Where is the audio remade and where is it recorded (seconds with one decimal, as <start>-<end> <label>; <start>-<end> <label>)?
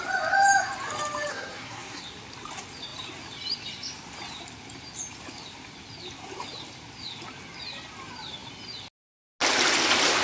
0.0-1.3 recorded; 1.3-2.0 remade; 2.0-10.2 recorded